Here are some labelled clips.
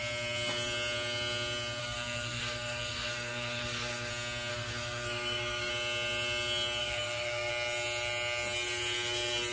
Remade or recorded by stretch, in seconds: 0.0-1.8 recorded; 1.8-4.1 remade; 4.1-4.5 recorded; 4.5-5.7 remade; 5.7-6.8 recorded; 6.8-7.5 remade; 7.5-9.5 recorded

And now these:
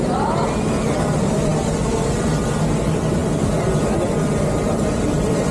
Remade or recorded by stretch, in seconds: 0.0-5.5 recorded

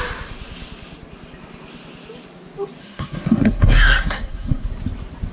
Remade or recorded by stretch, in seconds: 0.0-2.8 recorded; 2.8-4.7 remade; 4.7-5.3 recorded

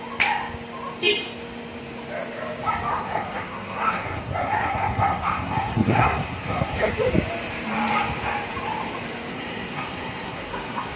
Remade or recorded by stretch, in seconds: 0.0-2.9 recorded; 2.9-6.9 remade; 6.9-9.3 recorded; 9.3-11.0 remade